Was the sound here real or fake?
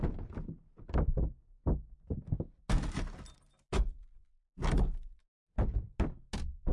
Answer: real